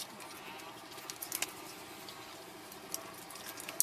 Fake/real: real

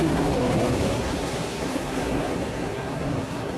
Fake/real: fake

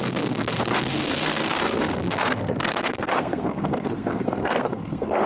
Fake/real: fake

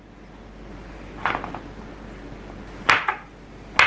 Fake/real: real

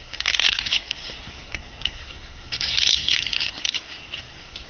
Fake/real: fake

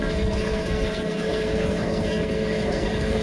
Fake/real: fake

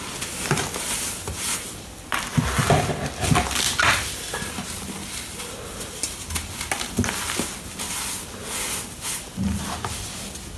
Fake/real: real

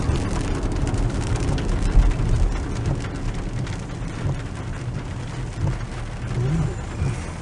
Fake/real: real